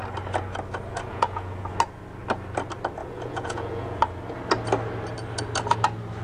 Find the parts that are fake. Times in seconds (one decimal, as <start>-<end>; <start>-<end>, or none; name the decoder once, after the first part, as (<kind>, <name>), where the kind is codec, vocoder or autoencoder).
1.1-1.6 (vocoder, Vocos); 3.0-4.0